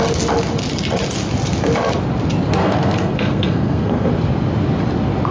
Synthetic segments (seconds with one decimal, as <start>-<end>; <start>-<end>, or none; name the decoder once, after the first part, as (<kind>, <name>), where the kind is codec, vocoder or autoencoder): 2.6-4.1 (codec, SNAC)